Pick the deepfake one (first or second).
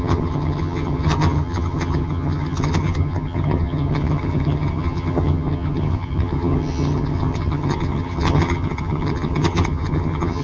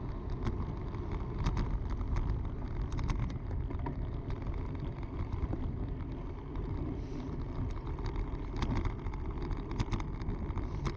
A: first